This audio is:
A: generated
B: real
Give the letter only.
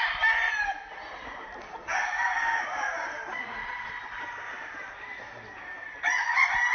B